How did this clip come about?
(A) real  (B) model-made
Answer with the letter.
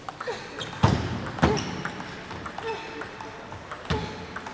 A